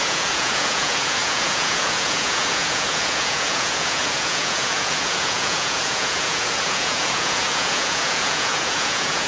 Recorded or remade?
remade